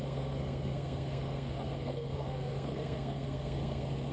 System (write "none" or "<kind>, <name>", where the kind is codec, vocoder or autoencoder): codec, SNAC